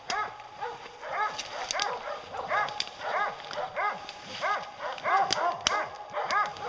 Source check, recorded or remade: recorded